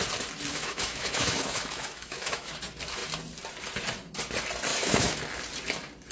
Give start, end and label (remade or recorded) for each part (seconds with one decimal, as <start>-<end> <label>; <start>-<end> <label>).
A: 0.0-0.5 recorded; 0.5-2.5 remade; 2.5-4.7 recorded; 4.7-5.2 remade; 5.2-6.1 recorded